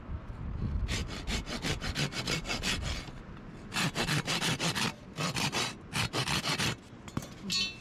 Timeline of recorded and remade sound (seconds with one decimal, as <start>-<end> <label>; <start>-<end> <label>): 0.0-1.0 recorded; 1.0-2.2 remade; 2.2-7.8 recorded